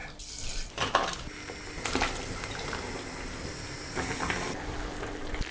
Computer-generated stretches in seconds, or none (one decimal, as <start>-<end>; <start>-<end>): none